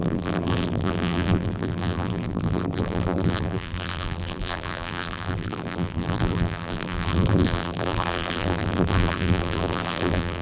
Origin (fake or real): fake